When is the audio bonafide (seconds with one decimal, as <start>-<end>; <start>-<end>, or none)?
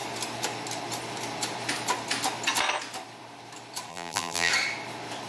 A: 0.0-3.9; 4.5-5.3